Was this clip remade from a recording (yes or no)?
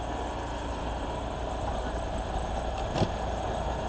no